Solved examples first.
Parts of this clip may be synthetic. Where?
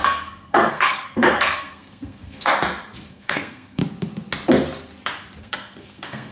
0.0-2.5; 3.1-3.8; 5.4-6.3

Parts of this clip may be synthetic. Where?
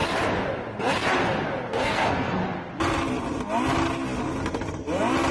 1.7-2.4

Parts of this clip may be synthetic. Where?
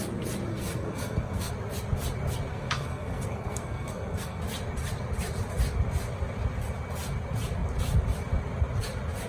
0.5-1.5; 2.5-4.4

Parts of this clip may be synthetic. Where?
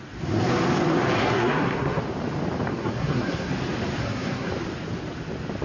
1.2-2.0; 2.7-3.5; 4.0-4.5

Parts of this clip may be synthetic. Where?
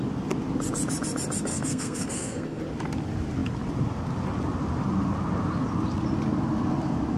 1.5-2.6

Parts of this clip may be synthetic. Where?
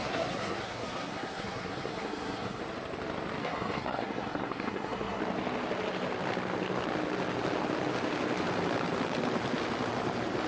0.0-2.6; 3.4-5.2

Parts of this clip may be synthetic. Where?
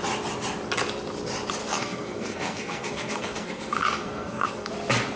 1.6-4.7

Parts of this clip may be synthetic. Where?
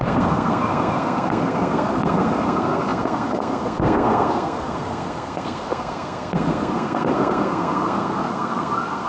0.0-9.1